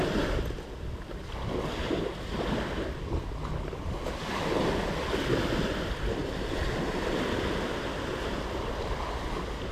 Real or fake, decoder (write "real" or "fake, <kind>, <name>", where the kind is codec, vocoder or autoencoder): real